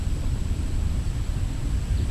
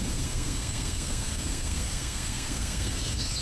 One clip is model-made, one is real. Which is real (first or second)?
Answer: first